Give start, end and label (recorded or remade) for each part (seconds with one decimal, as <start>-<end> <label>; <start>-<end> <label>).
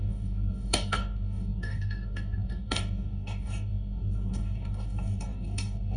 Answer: 0.0-6.0 remade